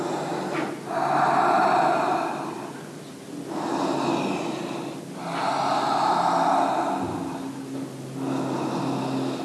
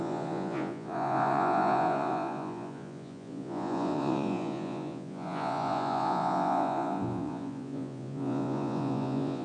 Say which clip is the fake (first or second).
second